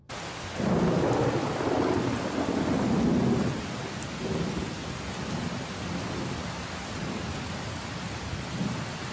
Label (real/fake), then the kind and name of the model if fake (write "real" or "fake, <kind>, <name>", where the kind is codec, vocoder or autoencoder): real